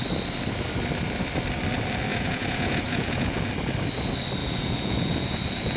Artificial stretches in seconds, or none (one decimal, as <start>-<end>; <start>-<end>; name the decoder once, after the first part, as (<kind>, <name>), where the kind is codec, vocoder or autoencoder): 2.1-3.5 (vocoder, Vocos); 4.4-5.8